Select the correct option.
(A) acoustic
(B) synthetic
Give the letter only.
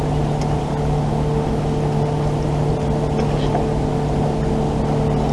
A